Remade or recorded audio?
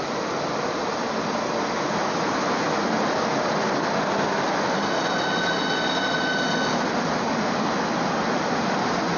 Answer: recorded